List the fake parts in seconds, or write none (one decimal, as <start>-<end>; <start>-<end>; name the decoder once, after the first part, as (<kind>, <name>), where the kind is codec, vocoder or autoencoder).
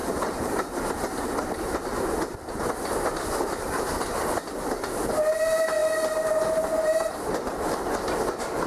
none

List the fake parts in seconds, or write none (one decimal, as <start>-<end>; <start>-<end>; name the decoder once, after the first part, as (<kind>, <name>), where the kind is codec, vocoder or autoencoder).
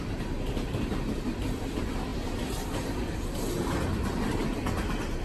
none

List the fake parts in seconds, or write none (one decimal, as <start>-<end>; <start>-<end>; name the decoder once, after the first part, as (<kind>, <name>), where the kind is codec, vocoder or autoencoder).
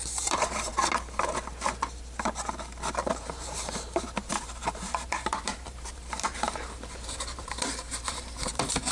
0.0-0.7 (vocoder, BigVGAN v2); 3.1-8.9